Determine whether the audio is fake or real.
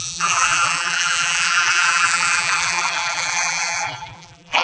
fake